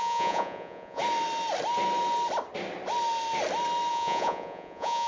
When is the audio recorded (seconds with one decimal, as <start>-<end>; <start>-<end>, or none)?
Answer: 1.0-3.9